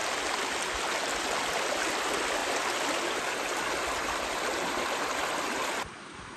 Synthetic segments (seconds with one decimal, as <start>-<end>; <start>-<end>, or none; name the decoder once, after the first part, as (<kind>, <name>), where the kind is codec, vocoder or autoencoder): none